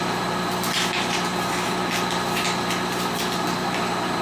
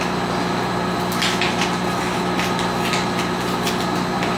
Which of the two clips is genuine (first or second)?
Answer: second